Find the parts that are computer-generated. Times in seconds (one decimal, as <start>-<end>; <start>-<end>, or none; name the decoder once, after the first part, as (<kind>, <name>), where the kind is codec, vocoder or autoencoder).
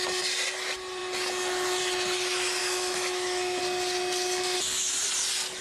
2.6-3.6 (autoencoder, DAC-VAE)